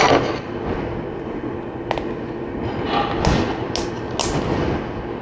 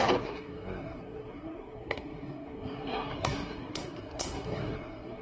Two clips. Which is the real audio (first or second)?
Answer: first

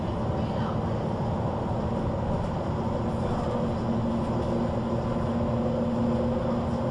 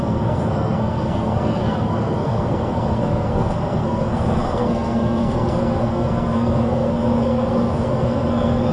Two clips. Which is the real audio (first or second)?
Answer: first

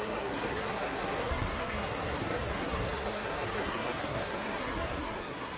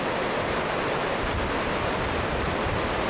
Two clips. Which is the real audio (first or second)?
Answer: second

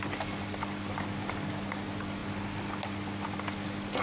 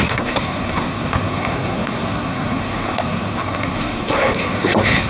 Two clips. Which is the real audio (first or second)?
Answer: first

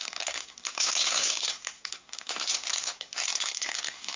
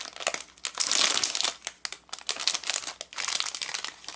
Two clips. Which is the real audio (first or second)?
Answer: second